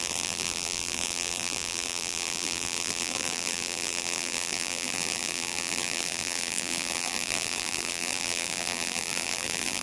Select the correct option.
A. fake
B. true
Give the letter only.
A